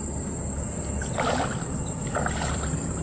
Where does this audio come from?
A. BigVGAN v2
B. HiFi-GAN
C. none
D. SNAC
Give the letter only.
C